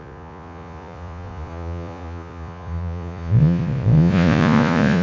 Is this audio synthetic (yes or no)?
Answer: yes